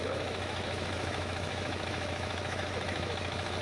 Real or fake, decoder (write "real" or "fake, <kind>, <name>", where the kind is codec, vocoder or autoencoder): fake, autoencoder, DAC-VAE